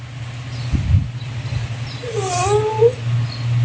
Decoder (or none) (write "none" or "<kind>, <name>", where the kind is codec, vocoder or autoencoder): none